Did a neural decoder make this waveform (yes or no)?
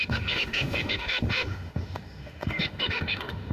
yes